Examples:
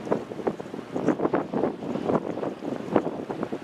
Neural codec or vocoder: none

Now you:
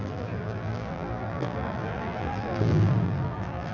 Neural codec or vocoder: vocoder, BigVGAN v2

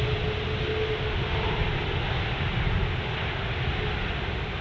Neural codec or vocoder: none